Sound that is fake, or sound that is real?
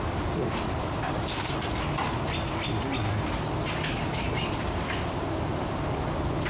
real